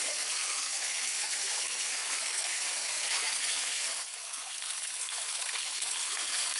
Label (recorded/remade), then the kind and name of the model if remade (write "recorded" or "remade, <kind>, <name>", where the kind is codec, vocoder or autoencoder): remade, codec, SNAC